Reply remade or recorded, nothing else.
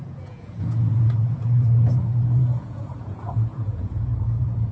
remade